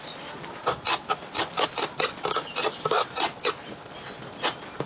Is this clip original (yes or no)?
yes